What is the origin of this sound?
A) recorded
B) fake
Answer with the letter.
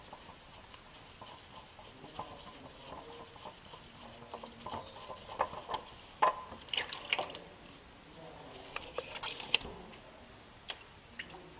A